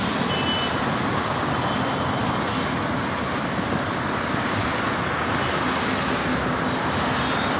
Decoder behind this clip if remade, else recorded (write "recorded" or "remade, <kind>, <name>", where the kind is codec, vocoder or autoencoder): recorded